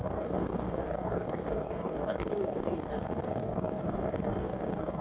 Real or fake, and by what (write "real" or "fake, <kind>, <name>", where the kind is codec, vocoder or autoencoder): fake, codec, DAC